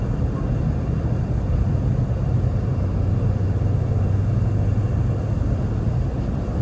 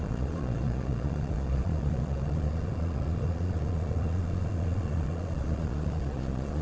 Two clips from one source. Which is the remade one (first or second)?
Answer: second